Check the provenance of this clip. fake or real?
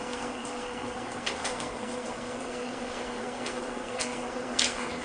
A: fake